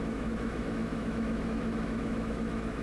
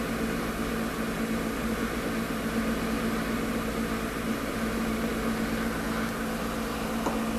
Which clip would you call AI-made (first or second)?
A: first